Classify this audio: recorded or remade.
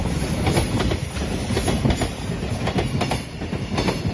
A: recorded